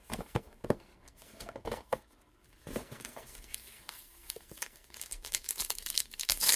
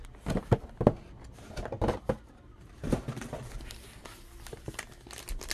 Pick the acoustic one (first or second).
second